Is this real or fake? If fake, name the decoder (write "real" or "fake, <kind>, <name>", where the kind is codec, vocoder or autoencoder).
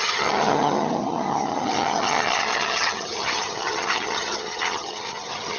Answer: fake, vocoder, HiFi-GAN